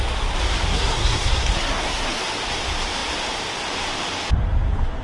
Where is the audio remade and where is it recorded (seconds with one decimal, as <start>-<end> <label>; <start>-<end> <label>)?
0.0-0.7 recorded; 0.7-2.2 remade; 2.2-5.0 recorded